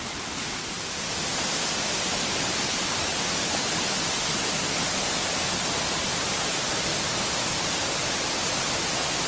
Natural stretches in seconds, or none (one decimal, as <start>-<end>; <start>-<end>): 0.0-1.3; 3.1-9.3